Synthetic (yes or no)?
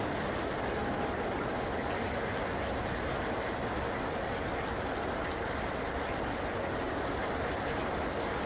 no